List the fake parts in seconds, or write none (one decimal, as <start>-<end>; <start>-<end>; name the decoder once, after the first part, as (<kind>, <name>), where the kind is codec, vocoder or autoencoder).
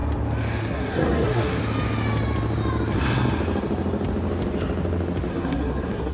0.6-1.6 (codec, SNAC); 5.3-6.1